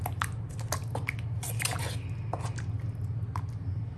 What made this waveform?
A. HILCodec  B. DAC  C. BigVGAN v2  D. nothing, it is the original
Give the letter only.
D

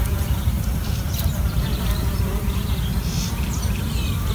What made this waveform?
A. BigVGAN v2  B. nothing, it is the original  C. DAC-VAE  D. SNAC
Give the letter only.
A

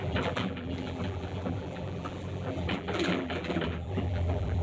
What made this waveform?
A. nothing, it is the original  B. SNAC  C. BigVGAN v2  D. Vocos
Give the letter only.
C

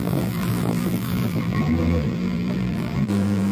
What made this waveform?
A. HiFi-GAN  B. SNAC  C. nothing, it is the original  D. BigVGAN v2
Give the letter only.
D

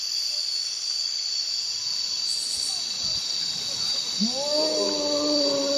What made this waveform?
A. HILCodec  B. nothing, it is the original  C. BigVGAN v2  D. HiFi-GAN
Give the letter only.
B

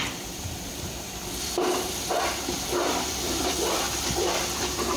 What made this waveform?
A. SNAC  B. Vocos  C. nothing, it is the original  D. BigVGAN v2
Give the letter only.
D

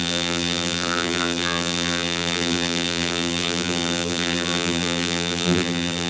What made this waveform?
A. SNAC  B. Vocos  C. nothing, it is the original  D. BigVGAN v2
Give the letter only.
D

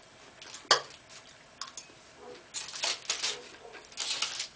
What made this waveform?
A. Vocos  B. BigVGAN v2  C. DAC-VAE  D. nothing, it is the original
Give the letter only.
D